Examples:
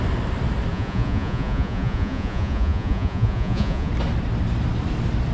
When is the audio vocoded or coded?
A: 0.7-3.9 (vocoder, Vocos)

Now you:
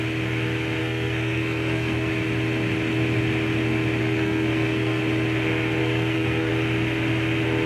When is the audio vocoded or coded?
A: 0.8-2.1 (codec, SNAC); 4.0-5.0; 5.8-6.5

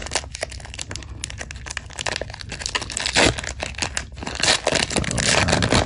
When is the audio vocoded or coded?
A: none

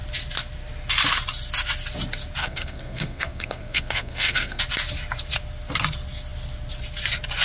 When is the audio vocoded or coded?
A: 2.4-4.6 (codec, SNAC)

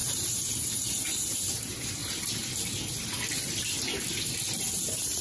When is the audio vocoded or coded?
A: 0.0-2.0 (vocoder, BigVGAN v2); 4.6-5.2

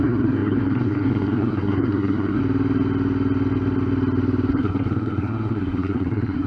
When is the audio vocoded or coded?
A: 0.0-2.4 (codec, SNAC); 4.5-6.5

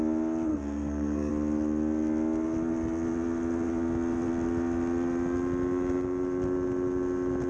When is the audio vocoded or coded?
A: 0.5-1.3 (codec, SNAC)

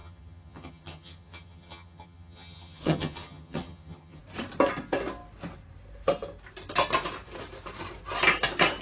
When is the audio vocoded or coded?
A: 0.0-4.2 (vocoder, HiFi-GAN)